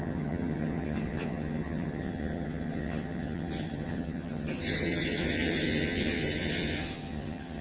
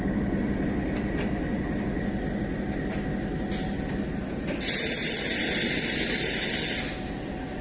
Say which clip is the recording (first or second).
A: second